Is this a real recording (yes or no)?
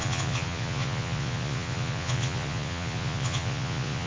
no